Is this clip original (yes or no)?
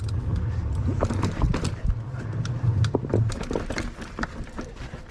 yes